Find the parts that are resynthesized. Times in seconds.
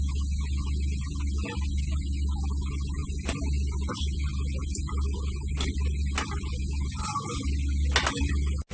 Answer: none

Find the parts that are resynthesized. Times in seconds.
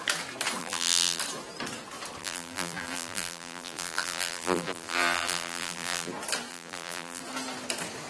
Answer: 0.6-1.2 (vocoder, BigVGAN v2); 2.2-6.1; 6.5-7.2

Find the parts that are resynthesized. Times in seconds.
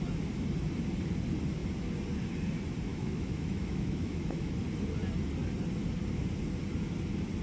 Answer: 2.9-4.6 (autoencoder, DAC-VAE)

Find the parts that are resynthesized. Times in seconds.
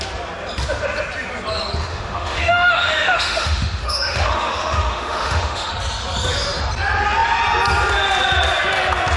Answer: 1.9-5.7 (autoencoder, DAC-VAE)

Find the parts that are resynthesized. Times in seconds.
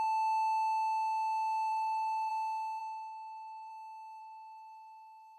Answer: 1.7-2.3 (autoencoder, DAC-VAE); 2.8-3.7; 4.2-5.4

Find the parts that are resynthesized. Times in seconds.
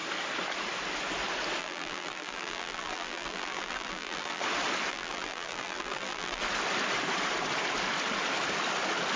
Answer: 1.6-4.4 (vocoder, BigVGAN v2); 4.9-6.4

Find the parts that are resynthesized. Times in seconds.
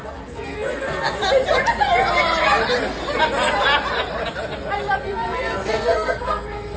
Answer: 0.0-1.2 (codec, SNAC); 5.0-6.8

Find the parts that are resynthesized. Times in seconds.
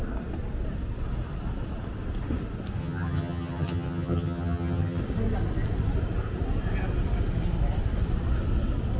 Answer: 2.8-5.0 (vocoder, HiFi-GAN)